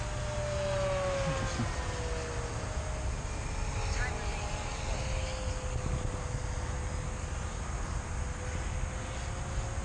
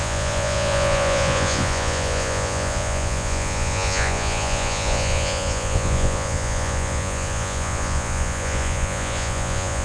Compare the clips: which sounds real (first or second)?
first